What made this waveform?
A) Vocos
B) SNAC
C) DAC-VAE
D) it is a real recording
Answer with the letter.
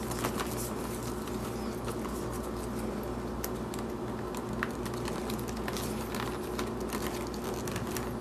D